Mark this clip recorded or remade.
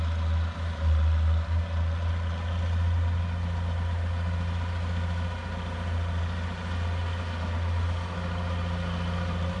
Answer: recorded